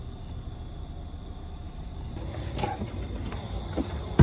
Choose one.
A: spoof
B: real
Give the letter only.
B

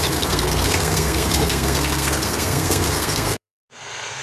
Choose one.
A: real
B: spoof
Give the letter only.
B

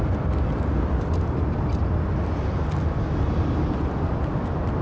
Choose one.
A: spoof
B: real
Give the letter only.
B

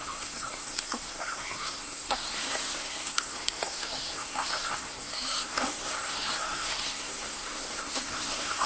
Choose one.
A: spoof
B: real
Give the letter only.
A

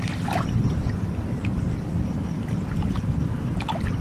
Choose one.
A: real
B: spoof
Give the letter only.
A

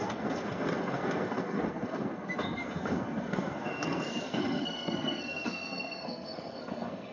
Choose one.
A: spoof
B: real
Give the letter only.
A